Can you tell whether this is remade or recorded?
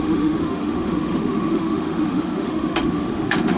remade